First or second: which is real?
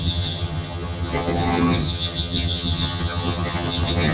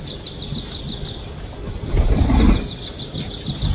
second